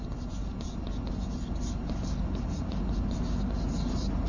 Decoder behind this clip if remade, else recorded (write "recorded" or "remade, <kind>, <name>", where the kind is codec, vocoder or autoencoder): recorded